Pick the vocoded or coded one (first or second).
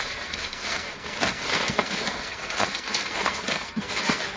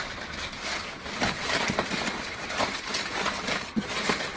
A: first